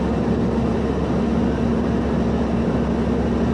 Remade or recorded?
recorded